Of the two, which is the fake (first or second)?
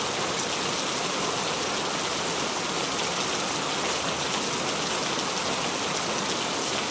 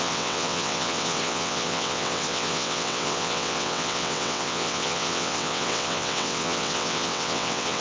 second